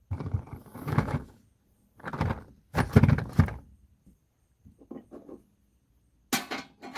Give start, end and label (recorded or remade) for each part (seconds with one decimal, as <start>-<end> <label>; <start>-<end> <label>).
0.0-0.6 recorded; 0.6-1.4 remade; 1.4-7.0 recorded